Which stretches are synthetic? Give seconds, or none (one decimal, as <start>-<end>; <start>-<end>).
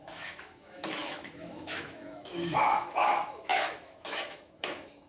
0.0-5.1